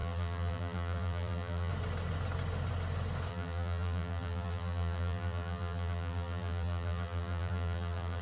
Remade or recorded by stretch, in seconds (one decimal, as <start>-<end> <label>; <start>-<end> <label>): 0.0-1.7 remade; 1.7-3.3 recorded; 3.3-8.2 remade